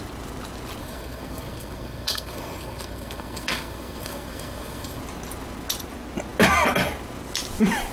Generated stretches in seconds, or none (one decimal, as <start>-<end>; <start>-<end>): 0.8-5.0